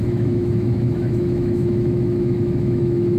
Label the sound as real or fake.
fake